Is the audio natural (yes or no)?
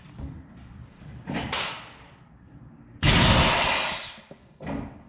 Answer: yes